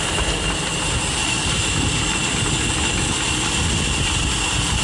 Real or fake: real